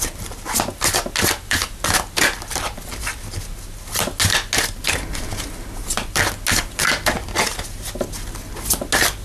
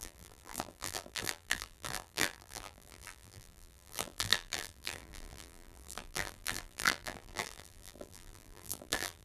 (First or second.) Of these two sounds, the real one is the first